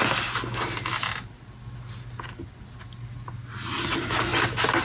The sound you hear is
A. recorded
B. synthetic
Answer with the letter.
A